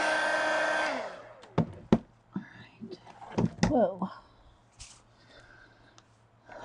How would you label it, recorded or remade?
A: recorded